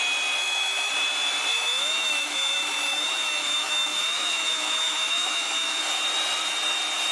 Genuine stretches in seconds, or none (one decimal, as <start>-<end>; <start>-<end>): 0.0-0.4; 0.9-1.5; 5.8-7.1